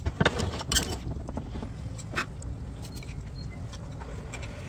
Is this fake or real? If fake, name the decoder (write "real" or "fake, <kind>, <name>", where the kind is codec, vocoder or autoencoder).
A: real